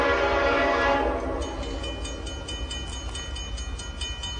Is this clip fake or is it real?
real